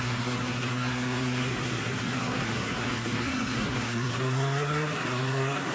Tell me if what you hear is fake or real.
fake